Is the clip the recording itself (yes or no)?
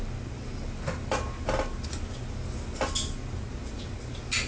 yes